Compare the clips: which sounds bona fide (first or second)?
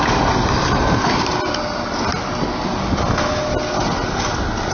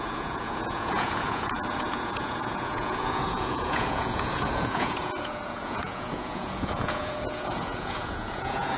first